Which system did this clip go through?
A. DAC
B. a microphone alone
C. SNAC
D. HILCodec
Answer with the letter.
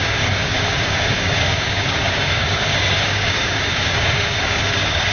A